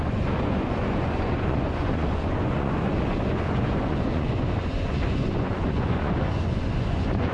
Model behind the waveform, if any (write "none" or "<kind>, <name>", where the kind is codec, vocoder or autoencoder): vocoder, Vocos